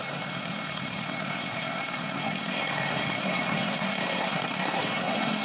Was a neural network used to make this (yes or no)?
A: yes